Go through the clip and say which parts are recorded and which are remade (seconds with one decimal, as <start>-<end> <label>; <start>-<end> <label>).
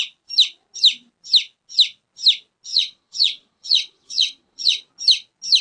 0.0-2.7 recorded; 2.7-4.9 remade; 4.9-5.6 recorded